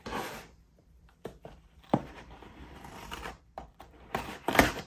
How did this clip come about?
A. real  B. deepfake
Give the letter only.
B